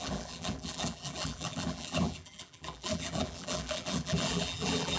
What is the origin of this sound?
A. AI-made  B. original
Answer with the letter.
A